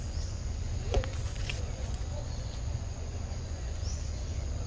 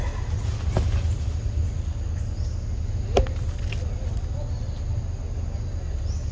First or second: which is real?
second